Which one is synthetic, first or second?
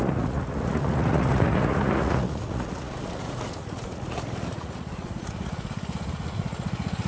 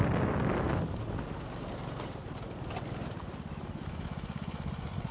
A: first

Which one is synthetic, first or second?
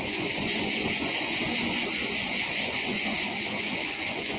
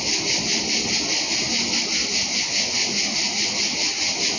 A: first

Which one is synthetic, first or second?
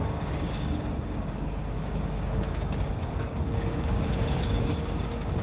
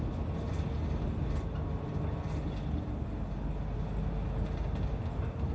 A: first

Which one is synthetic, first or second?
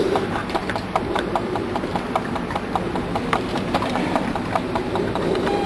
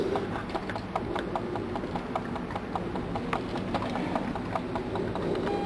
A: first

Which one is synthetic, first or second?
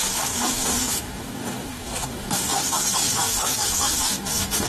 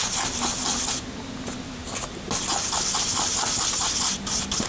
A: first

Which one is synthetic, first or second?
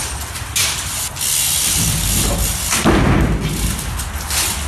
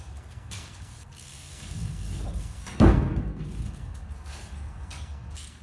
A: second